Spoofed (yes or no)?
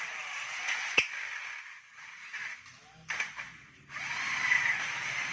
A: no